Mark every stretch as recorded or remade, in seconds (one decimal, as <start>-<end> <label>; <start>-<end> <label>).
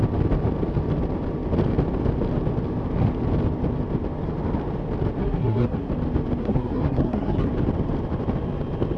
0.0-5.2 recorded; 5.2-5.9 remade; 5.9-6.4 recorded; 6.4-7.5 remade; 7.5-9.0 recorded